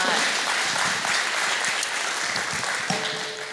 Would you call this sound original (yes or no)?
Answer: yes